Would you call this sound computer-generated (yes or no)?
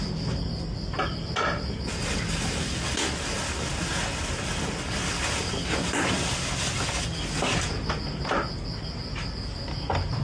no